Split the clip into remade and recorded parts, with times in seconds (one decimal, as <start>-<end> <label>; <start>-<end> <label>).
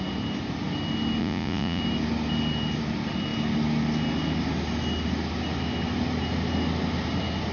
0.0-1.2 recorded; 1.2-1.8 remade; 1.8-7.5 recorded